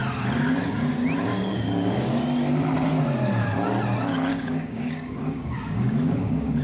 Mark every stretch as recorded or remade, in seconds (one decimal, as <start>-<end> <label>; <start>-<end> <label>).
0.0-1.3 recorded; 1.3-2.2 remade; 2.2-4.3 recorded; 4.3-6.6 remade